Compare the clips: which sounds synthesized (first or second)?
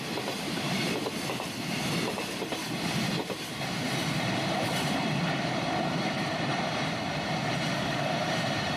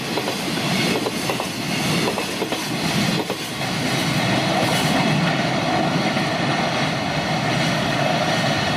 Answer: first